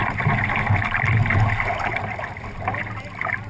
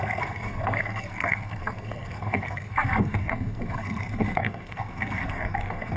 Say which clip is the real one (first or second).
first